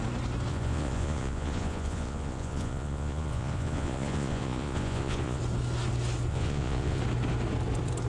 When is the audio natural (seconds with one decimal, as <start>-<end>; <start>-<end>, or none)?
0.0-0.5; 5.4-6.3; 7.0-8.1